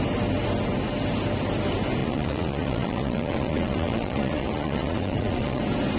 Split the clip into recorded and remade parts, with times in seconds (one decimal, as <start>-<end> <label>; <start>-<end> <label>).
0.0-2.0 recorded; 2.0-5.6 remade; 5.6-6.0 recorded